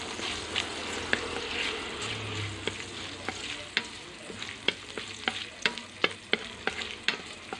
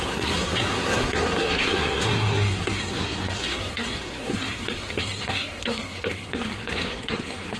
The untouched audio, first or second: first